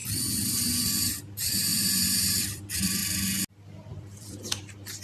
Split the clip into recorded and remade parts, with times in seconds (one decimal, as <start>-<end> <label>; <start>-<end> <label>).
0.0-3.0 remade; 3.0-3.5 recorded; 3.5-5.0 remade